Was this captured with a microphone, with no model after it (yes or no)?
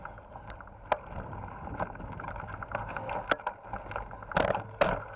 yes